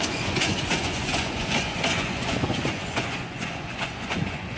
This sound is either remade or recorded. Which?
remade